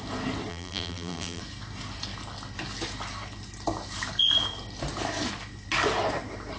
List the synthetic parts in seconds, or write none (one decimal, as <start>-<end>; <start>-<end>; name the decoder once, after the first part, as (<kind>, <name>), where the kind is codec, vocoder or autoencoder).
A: 0.5-1.4 (vocoder, BigVGAN v2)

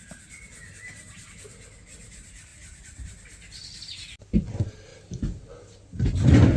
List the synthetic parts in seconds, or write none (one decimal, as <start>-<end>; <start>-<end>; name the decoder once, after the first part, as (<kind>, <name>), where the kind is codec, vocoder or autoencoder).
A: none

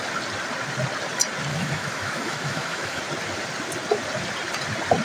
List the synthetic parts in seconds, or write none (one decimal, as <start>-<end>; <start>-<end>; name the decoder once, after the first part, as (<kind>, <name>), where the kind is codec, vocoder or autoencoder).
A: 1.5-3.0 (autoencoder, DAC-VAE)

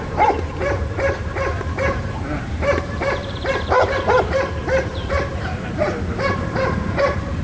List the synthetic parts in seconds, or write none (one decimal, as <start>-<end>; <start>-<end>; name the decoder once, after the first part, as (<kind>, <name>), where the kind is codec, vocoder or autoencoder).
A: 0.0-7.4 (vocoder, BigVGAN v2)

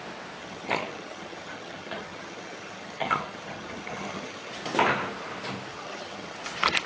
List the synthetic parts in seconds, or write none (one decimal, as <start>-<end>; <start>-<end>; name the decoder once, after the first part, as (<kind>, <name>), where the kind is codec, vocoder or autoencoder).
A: 0.4-4.5 (vocoder, HiFi-GAN); 5.7-6.4

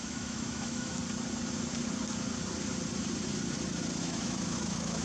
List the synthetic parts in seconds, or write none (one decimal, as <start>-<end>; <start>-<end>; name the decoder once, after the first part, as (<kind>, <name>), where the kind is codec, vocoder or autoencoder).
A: 0.0-1.0 (autoencoder, DAC-VAE); 4.0-5.0

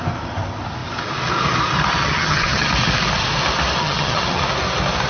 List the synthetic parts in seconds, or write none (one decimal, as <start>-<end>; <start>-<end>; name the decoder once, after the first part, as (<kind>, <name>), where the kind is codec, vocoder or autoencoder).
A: 2.0-2.7 (vocoder, HiFi-GAN); 3.8-4.4